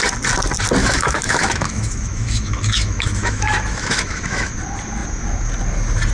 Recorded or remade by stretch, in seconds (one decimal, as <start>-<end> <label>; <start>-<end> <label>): 0.0-0.8 recorded; 0.8-4.5 remade; 4.5-6.1 recorded